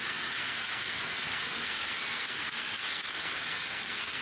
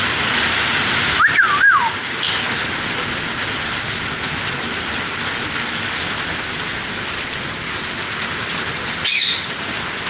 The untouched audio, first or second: second